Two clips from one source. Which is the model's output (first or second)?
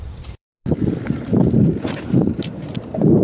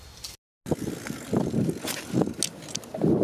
first